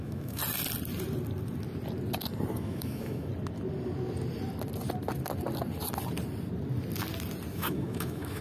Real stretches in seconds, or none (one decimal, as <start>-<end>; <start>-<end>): 0.4-2.5; 3.3-7.5